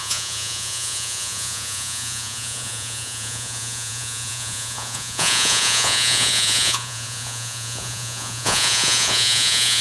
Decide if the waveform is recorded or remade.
remade